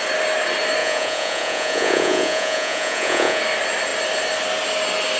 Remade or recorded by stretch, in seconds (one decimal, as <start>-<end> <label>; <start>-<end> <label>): 0.0-0.8 recorded; 0.8-3.4 remade; 3.4-5.2 recorded

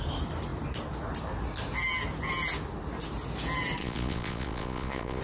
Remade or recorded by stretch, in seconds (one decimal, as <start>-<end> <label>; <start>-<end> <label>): 0.0-3.8 recorded; 3.8-5.2 remade

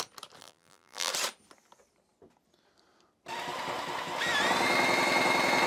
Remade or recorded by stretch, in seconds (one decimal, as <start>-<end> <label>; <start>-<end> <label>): 0.0-0.4 recorded; 0.4-1.1 remade; 1.1-5.7 recorded